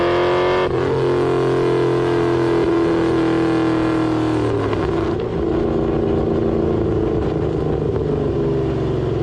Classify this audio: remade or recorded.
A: recorded